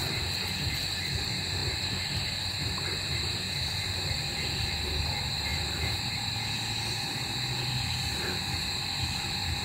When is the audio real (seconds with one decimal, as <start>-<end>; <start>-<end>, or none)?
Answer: 0.0-9.6